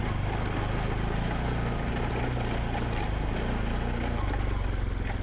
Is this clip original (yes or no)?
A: yes